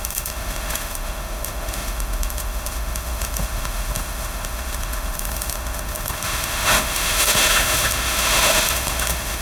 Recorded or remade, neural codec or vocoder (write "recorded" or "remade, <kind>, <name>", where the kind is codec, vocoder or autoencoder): remade, autoencoder, DAC-VAE